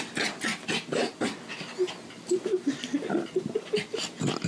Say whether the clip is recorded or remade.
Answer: recorded